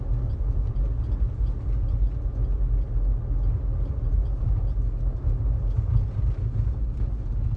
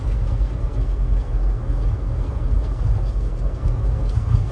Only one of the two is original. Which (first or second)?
first